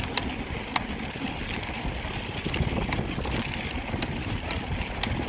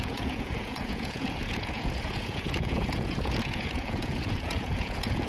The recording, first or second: first